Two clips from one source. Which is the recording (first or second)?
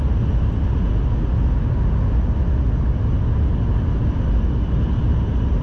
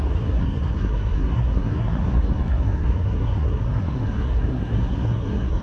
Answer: first